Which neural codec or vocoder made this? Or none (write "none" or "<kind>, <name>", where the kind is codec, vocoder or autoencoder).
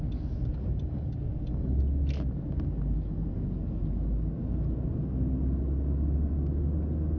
none